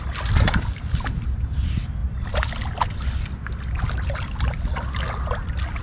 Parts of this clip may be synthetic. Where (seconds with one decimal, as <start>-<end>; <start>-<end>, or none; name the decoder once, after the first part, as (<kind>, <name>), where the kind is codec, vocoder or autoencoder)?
none